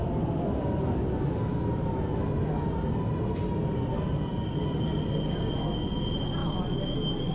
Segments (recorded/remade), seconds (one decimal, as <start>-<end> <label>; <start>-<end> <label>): 0.0-7.3 recorded